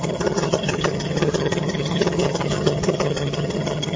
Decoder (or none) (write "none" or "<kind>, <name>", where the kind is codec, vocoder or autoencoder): vocoder, HiFi-GAN